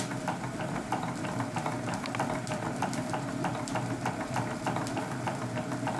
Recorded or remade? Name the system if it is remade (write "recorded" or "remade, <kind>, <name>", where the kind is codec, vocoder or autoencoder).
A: remade, vocoder, BigVGAN v2